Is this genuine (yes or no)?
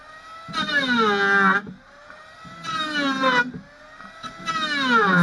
yes